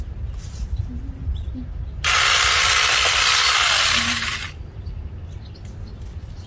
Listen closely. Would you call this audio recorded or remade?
recorded